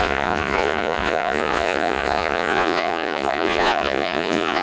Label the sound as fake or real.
fake